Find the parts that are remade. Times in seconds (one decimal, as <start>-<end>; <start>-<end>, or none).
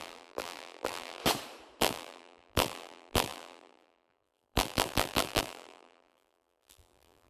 0.0-1.2; 1.8-7.3